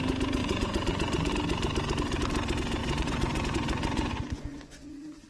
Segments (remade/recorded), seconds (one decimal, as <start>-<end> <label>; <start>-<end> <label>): 0.0-0.4 recorded; 0.4-1.3 remade; 1.3-2.8 recorded; 2.8-5.3 remade